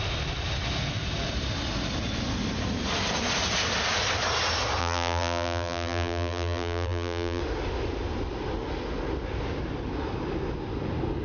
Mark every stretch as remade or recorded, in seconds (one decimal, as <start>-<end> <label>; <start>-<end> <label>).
0.0-4.8 recorded; 4.8-7.4 remade; 7.4-11.2 recorded